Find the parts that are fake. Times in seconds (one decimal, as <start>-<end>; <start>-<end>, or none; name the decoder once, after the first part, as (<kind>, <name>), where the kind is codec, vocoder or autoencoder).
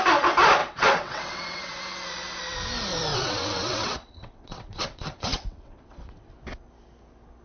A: 0.6-1.8 (vocoder, WaveNeXt); 3.1-6.3